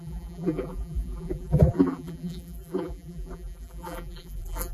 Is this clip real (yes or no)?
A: no